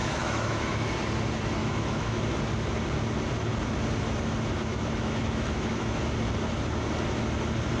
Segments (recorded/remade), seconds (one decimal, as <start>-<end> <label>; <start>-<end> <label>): 0.0-0.9 remade; 0.9-1.6 recorded; 1.6-2.2 remade; 2.2-4.7 recorded; 4.7-6.0 remade; 6.0-7.8 recorded

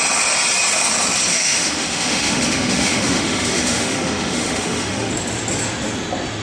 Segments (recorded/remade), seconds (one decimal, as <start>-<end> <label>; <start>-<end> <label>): 0.0-1.3 recorded; 1.3-5.1 remade; 5.1-6.4 recorded

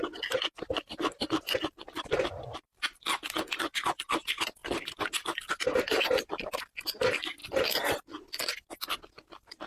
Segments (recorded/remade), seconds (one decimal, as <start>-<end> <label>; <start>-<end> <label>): 0.0-9.7 recorded

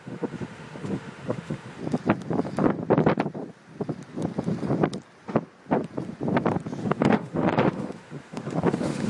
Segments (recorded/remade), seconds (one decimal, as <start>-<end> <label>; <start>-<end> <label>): 0.0-1.8 remade; 1.8-6.8 recorded; 6.8-9.1 remade

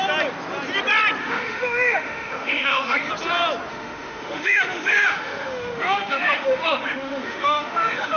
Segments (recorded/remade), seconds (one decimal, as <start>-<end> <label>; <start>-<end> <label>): 0.0-1.2 recorded; 1.2-3.1 remade; 3.1-3.7 recorded; 3.7-8.2 remade

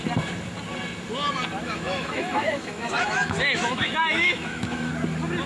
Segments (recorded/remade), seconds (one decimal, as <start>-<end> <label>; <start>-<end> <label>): 0.0-1.6 recorded; 1.6-4.9 remade; 4.9-5.5 recorded

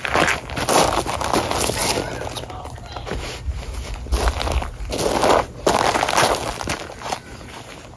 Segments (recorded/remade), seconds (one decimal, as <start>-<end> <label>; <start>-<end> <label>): 0.0-8.0 recorded